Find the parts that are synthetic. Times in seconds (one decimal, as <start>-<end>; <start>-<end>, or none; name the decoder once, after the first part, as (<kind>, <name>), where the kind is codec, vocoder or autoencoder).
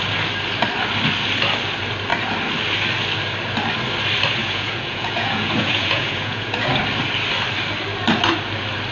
4.4-6.7 (vocoder, Vocos)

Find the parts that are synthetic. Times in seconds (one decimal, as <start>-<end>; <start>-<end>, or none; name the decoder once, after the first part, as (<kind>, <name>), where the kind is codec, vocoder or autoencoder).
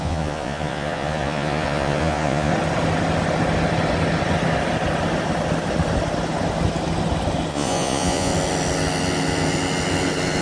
0.0-2.5 (vocoder, Vocos); 7.5-8.3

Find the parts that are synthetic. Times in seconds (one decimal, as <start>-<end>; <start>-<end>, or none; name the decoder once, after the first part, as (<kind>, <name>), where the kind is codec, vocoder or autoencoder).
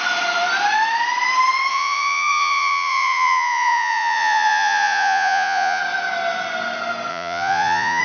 1.7-5.8 (vocoder, Vocos); 7.1-8.0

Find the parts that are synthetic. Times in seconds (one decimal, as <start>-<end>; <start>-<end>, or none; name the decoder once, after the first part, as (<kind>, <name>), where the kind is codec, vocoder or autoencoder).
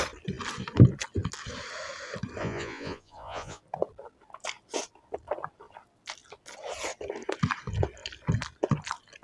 2.4-3.6 (vocoder, Vocos)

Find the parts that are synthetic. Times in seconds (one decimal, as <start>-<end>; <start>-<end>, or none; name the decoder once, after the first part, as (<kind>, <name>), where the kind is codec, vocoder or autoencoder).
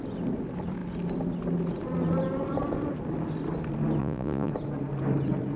4.0-4.5 (vocoder, Vocos)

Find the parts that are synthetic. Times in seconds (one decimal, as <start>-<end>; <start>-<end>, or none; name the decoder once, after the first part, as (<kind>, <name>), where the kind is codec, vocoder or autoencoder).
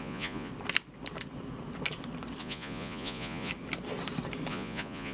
0.0-0.5 (vocoder, Vocos); 2.4-3.5; 4.5-5.1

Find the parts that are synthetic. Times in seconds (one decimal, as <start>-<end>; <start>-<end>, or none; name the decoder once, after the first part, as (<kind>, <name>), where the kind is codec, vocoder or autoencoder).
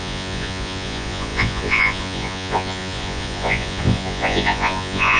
0.0-5.2 (vocoder, Vocos)